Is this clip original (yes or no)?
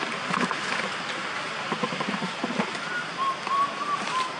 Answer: yes